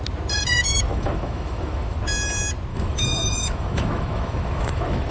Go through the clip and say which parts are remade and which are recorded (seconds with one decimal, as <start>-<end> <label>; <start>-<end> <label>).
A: 0.0-0.9 recorded; 0.9-2.0 remade; 2.0-2.7 recorded; 2.7-5.1 remade